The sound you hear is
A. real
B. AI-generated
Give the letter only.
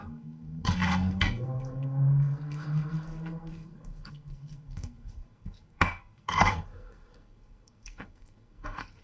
B